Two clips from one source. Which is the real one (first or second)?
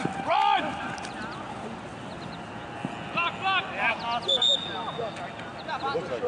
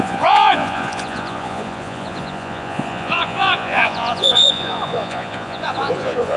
first